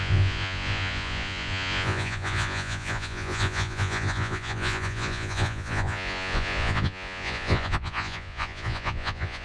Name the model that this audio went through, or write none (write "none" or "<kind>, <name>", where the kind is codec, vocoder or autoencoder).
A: vocoder, Vocos